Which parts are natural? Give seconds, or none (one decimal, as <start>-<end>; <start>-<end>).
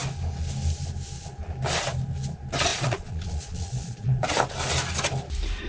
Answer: 0.0-2.7; 4.2-5.7